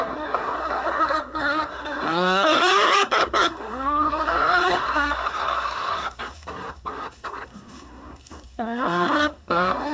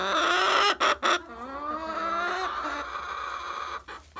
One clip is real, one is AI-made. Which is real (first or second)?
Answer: second